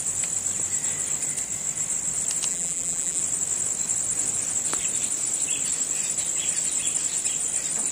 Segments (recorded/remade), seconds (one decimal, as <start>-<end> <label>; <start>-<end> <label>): 0.0-2.5 recorded; 2.5-3.2 remade; 3.2-7.9 recorded